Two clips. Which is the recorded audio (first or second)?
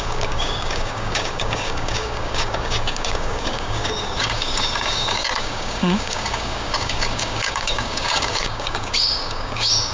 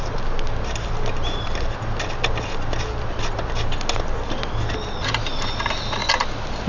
second